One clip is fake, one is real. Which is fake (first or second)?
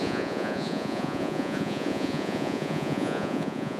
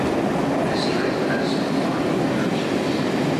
first